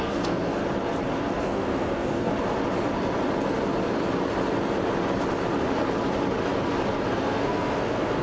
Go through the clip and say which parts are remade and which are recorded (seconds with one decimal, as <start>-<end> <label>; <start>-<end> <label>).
0.0-0.6 remade; 0.6-1.4 recorded; 1.4-2.3 remade; 2.3-7.1 recorded; 7.1-8.2 remade